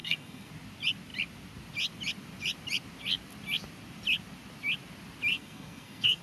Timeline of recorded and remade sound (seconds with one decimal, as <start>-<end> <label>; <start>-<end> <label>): 0.0-0.5 remade; 0.5-5.3 recorded; 5.3-6.2 remade